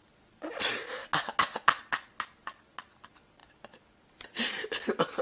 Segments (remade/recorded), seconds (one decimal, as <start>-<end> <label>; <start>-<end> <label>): 0.0-5.2 recorded